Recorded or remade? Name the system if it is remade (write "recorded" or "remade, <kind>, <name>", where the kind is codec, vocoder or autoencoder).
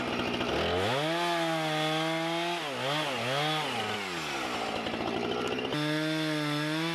recorded